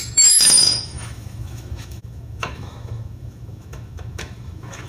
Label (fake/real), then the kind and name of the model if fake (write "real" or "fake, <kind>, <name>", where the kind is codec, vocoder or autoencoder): fake, autoencoder, DAC-VAE